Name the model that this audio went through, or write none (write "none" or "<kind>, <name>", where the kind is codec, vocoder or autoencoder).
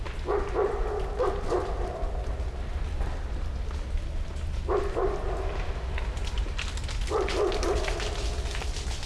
none